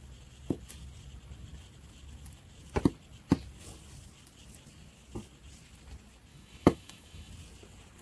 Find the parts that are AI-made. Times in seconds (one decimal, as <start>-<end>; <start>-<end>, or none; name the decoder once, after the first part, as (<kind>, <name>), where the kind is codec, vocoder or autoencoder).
6.3-7.3 (autoencoder, DAC-VAE)